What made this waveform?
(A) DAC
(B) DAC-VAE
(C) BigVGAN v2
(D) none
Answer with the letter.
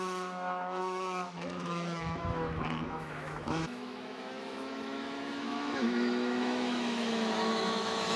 B